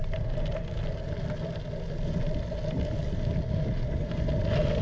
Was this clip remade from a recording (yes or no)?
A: no